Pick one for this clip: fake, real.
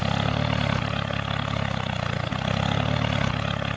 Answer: real